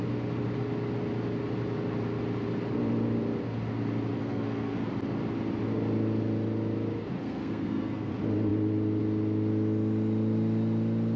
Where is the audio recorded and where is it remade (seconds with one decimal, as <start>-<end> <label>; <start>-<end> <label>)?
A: 0.0-4.2 recorded; 4.2-4.9 remade; 4.9-7.2 recorded; 7.2-8.1 remade; 8.1-11.2 recorded